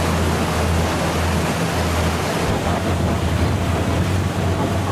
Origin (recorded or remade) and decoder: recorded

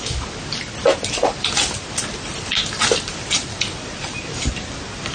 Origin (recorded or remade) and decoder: recorded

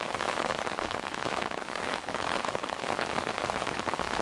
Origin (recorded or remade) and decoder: remade, codec, DAC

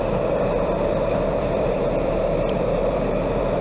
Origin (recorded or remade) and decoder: remade, vocoder, BigVGAN v2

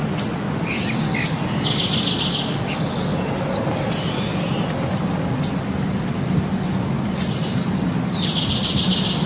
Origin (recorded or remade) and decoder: recorded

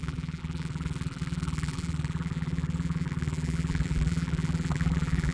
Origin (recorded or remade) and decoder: remade, vocoder, BigVGAN v2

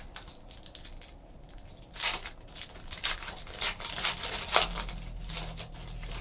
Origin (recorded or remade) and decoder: recorded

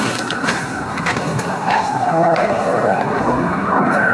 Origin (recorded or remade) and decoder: remade, codec, SNAC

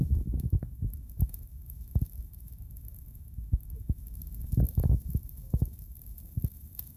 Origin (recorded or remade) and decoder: remade, autoencoder, DAC-VAE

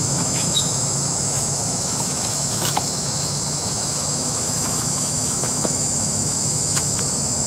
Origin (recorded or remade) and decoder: remade, autoencoder, DAC-VAE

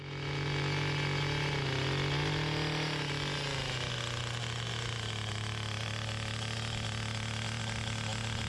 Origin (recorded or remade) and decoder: recorded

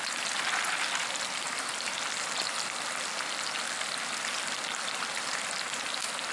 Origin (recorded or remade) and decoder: recorded